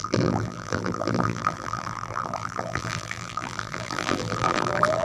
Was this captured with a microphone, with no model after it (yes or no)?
no